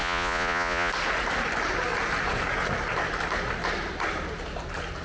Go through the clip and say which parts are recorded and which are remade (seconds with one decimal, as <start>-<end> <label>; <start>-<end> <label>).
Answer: 0.0-0.9 remade; 0.9-5.0 recorded